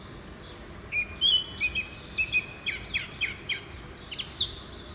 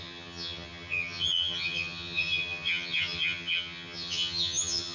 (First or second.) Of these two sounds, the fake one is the second